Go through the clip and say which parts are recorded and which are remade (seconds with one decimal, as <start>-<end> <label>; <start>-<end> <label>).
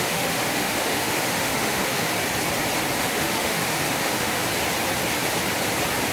0.0-2.1 remade; 2.1-3.0 recorded; 3.0-4.4 remade; 4.4-6.1 recorded